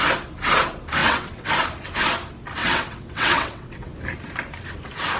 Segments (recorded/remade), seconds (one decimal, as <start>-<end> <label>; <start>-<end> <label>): 0.0-1.0 recorded; 1.0-1.5 remade; 1.5-2.6 recorded; 2.6-3.9 remade; 3.9-5.2 recorded